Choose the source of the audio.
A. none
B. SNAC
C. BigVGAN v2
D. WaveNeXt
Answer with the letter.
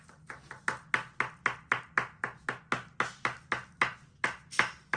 A